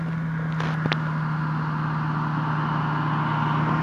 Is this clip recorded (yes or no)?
yes